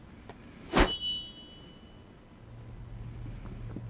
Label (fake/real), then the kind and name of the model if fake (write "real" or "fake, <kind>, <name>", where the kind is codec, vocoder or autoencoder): real